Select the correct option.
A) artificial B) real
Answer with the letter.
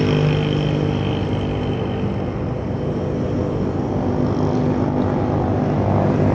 B